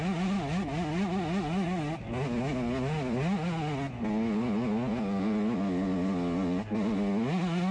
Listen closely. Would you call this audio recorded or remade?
recorded